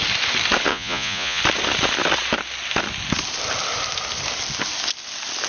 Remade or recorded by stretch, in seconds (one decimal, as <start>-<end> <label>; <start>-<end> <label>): 0.0-0.7 recorded; 0.7-1.4 remade; 1.4-5.5 recorded